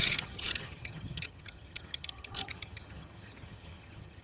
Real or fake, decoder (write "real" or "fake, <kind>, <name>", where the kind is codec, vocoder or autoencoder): fake, vocoder, HiFi-GAN